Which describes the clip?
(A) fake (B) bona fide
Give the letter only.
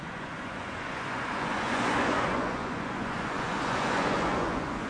A